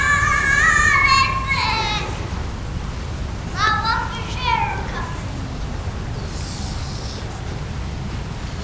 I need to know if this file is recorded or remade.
recorded